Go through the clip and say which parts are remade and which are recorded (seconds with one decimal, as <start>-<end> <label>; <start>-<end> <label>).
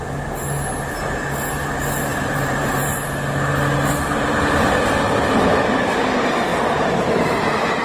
0.0-2.1 recorded; 2.1-3.0 remade; 3.0-6.5 recorded; 6.5-7.8 remade